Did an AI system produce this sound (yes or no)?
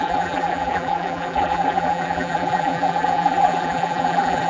yes